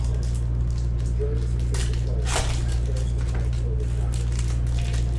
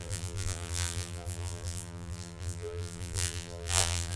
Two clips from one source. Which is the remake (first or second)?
second